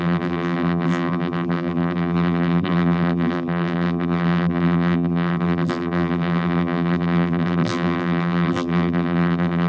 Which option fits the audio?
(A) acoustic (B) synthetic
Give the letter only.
B